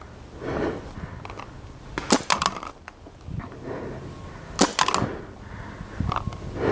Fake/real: real